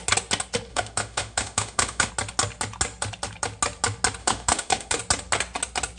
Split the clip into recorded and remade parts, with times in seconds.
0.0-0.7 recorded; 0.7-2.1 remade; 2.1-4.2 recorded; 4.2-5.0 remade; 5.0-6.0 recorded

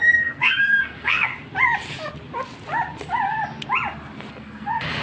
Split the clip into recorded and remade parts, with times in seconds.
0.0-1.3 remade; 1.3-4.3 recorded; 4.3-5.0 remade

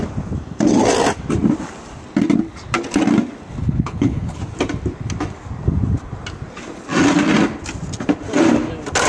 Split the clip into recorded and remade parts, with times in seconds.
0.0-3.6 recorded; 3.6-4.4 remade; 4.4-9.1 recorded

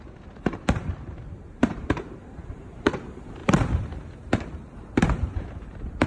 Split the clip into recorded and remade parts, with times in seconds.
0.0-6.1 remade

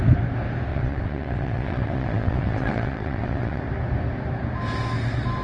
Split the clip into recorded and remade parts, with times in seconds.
0.0-0.7 recorded; 0.7-3.6 remade; 3.6-5.4 recorded

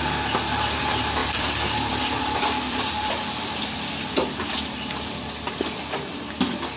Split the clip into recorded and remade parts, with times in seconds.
0.0-1.2 recorded; 1.2-5.3 remade; 5.3-6.8 recorded